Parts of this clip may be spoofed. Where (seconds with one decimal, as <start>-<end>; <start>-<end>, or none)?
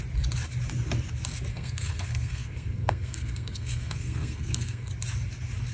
1.5-4.9